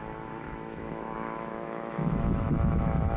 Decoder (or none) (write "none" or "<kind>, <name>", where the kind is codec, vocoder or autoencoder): autoencoder, DAC-VAE